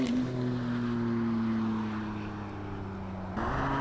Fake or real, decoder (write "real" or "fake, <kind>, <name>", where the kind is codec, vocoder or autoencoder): real